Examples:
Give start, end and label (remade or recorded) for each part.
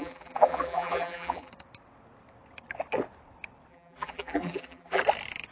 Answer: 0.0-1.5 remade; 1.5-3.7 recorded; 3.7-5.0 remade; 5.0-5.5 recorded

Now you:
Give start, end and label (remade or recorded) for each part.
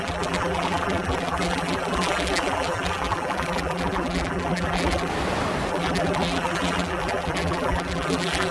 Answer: 0.0-5.1 remade; 5.1-5.7 recorded; 5.7-8.5 remade